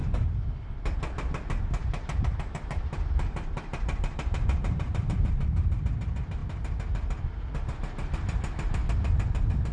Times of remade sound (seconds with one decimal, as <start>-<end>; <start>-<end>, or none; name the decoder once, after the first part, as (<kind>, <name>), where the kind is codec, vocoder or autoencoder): 0.0-0.5 (vocoder, BigVGAN v2); 1.8-5.8